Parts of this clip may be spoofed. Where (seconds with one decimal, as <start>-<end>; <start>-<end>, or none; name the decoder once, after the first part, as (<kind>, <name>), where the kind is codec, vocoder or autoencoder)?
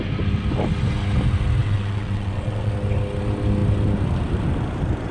1.6-2.7 (vocoder, WaveNeXt)